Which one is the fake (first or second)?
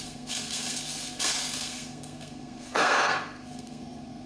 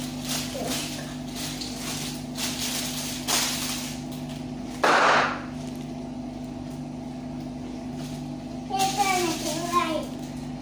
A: first